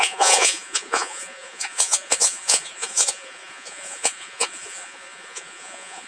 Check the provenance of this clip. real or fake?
fake